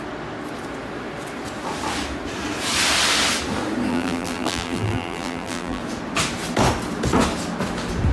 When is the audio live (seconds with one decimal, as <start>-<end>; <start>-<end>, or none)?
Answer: 0.0-3.9; 5.8-8.1